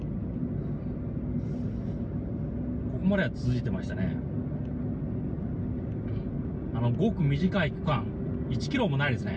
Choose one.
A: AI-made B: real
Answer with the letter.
B